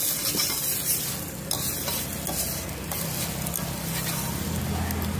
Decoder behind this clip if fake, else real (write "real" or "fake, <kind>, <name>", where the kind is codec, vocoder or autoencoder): real